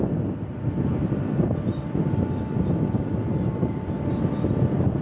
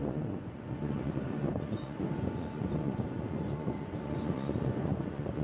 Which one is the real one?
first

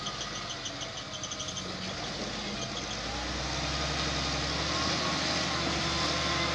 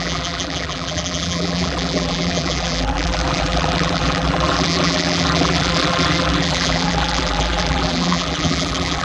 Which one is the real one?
first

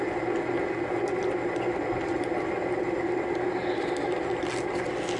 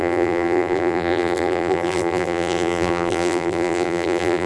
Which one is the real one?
first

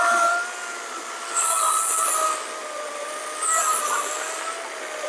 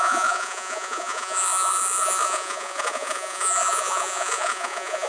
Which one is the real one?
first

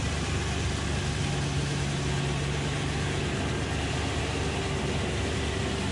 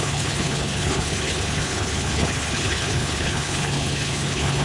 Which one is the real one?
first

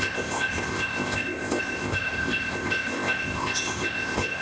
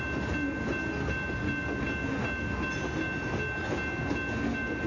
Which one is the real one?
second